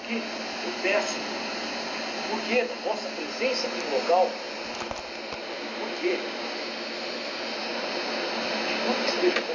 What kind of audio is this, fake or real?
real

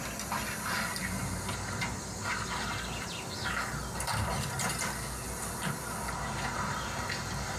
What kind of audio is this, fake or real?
real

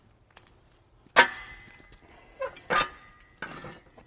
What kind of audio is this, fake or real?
real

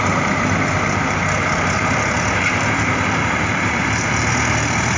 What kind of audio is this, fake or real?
fake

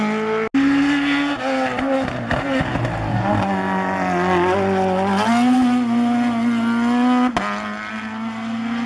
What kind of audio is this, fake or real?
real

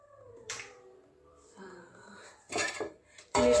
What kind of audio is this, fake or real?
fake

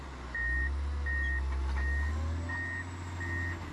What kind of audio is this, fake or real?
real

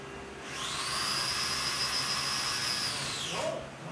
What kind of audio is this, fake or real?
real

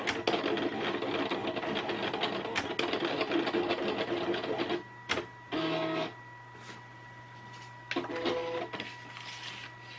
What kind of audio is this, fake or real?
real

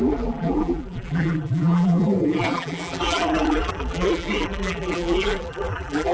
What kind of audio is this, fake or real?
fake